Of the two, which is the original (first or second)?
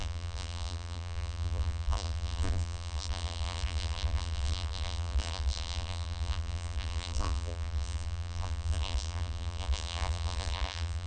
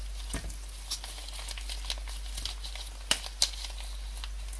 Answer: second